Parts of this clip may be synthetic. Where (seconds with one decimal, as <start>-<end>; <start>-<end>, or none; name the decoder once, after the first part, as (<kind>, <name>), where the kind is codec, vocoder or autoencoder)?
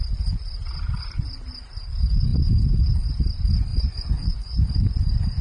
3.7-4.8 (vocoder, Vocos)